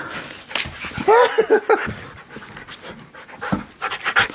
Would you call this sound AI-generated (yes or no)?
no